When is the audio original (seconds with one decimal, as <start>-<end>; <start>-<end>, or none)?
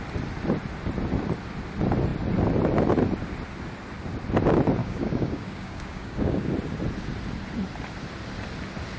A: 0.0-4.8; 6.5-9.0